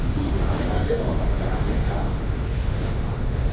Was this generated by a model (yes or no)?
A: yes